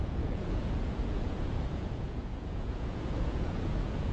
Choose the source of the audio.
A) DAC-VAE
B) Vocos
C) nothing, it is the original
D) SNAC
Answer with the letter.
B